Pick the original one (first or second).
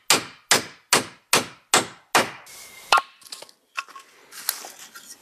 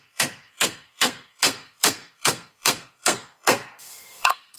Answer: first